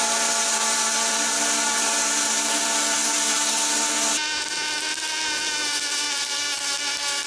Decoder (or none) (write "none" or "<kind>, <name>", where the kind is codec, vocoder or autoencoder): none